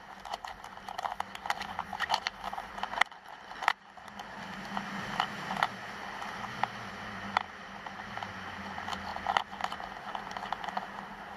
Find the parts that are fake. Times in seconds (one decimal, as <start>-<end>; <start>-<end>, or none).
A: 7.6-8.3